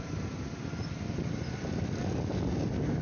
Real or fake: real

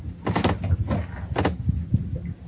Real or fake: real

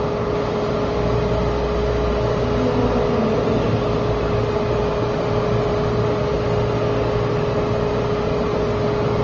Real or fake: real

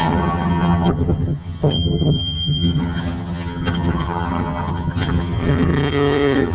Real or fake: fake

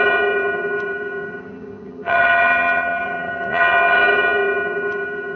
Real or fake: fake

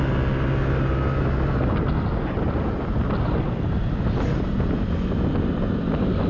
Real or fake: real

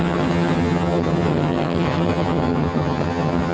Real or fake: fake